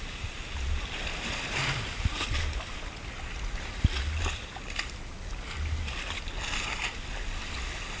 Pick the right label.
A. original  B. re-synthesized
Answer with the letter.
A